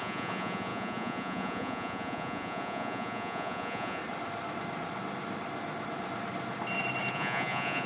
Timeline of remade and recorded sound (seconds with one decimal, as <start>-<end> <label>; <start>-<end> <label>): 0.0-4.0 remade; 4.0-7.1 recorded; 7.1-7.9 remade